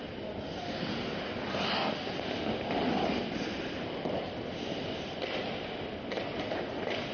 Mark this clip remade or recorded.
recorded